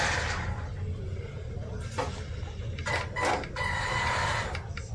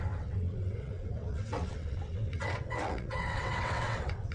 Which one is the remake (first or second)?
second